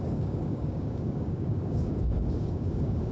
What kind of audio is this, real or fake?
fake